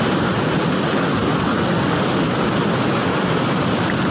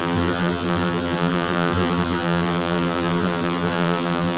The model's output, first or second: second